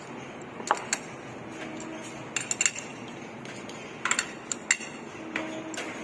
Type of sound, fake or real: real